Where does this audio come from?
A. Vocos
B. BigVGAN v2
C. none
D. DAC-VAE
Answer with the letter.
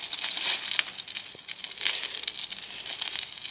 C